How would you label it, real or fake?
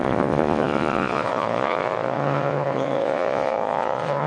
fake